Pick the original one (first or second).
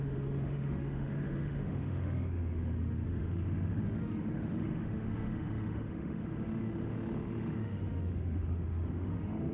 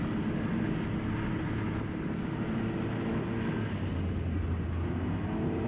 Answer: second